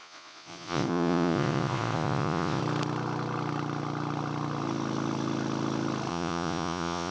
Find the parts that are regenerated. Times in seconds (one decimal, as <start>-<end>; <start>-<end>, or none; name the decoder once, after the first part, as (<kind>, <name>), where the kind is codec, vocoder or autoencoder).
0.0-2.6 (vocoder, Vocos); 6.1-7.1